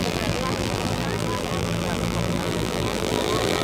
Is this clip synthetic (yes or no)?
yes